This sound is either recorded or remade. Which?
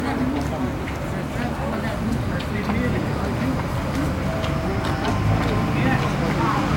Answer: recorded